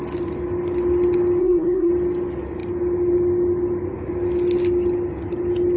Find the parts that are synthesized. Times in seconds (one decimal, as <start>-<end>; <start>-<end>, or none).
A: 1.4-1.9